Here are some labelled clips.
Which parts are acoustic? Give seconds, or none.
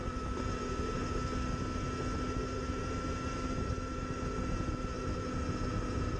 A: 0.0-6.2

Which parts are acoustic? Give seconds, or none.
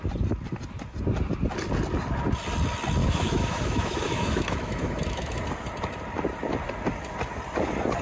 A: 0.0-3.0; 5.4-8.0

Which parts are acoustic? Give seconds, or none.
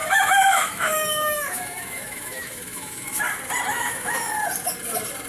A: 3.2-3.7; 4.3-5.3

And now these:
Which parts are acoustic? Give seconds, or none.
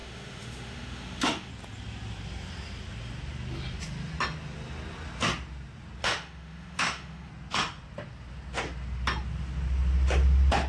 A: 1.5-6.0; 7.3-10.7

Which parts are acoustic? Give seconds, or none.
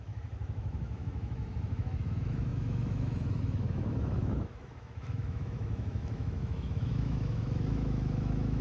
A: none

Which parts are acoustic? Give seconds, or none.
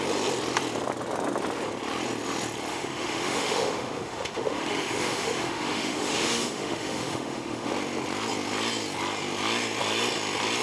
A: 0.0-2.7; 7.7-10.6